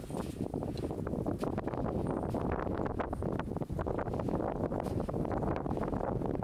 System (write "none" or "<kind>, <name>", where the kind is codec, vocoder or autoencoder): none